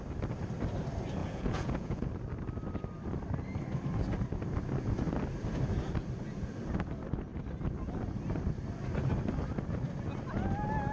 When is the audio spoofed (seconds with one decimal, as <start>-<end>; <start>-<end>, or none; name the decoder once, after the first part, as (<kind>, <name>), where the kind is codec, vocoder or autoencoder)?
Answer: 1.2-2.1 (vocoder, Vocos)